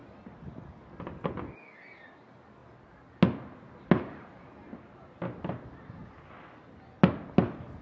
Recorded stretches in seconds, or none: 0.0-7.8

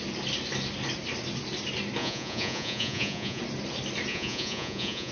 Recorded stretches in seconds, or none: 0.0-2.0; 3.4-4.1

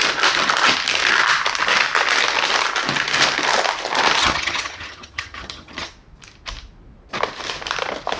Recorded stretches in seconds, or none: 0.0-4.2; 5.9-8.2

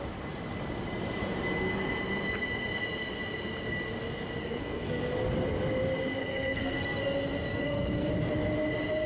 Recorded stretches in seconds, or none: 0.0-4.4; 5.1-6.2; 7.0-7.5; 8.1-9.1